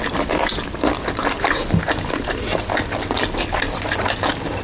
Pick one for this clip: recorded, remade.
recorded